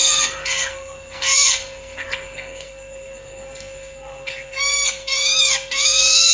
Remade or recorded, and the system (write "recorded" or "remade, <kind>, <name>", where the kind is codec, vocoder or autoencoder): remade, codec, SNAC